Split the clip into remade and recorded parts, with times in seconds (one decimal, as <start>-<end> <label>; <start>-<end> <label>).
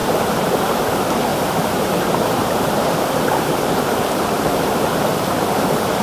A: 0.0-0.9 remade; 0.9-1.3 recorded; 1.3-4.9 remade; 4.9-6.0 recorded